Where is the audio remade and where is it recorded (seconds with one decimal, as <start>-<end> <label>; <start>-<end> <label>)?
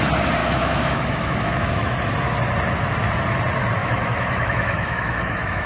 0.0-0.4 recorded; 0.4-1.9 remade; 1.9-3.8 recorded; 3.8-5.7 remade